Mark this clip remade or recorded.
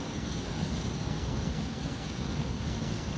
remade